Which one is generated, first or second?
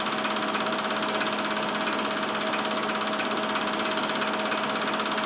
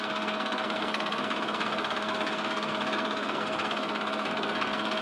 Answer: second